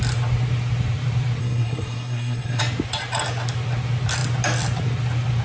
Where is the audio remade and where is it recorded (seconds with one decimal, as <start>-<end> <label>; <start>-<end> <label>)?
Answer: 0.0-1.4 recorded; 1.4-2.6 remade; 2.6-5.4 recorded